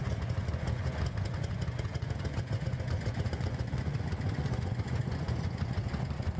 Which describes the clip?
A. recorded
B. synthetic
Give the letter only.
B